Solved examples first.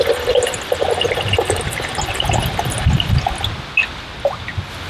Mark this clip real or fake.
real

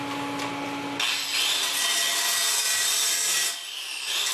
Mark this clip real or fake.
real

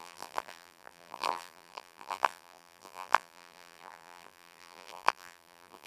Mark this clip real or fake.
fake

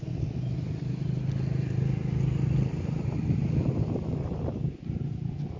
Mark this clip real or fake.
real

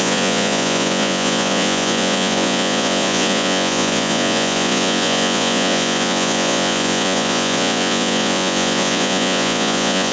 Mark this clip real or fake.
fake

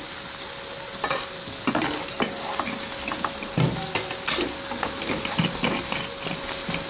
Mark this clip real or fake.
real